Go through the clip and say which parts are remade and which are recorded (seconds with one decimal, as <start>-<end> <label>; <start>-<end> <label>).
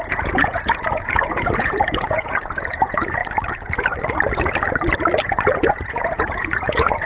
0.0-3.2 remade; 3.2-5.2 recorded; 5.2-7.1 remade